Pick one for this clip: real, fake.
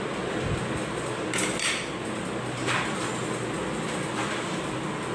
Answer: real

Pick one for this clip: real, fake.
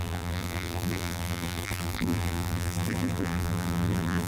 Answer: fake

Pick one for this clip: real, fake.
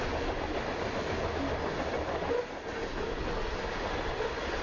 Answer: real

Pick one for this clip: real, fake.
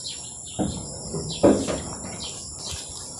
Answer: real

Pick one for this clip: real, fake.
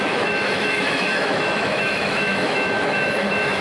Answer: fake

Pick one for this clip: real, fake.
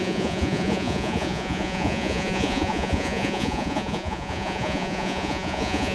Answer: fake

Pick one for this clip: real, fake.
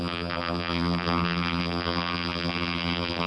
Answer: fake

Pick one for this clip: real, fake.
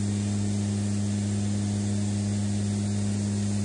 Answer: real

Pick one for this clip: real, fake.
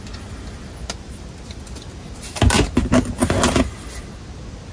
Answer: real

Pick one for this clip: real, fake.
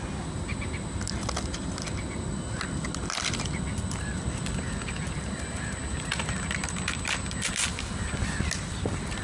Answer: real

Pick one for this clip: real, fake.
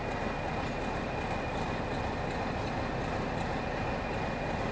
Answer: real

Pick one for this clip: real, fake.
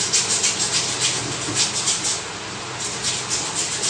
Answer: real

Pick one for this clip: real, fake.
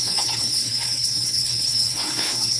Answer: fake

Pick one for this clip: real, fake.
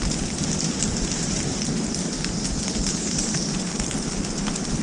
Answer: real